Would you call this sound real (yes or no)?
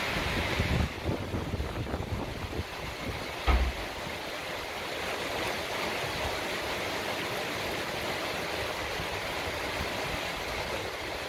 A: yes